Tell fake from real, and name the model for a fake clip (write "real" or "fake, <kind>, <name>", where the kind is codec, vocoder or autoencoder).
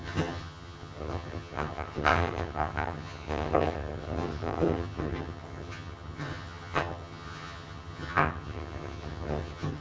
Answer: fake, vocoder, HiFi-GAN